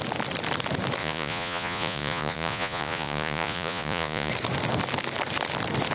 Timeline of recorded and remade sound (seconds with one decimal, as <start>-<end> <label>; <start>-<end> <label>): 0.0-1.0 recorded; 1.0-4.3 remade; 4.3-5.9 recorded